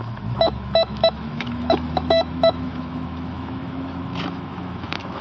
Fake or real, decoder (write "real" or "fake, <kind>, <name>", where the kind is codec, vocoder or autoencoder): fake, autoencoder, DAC-VAE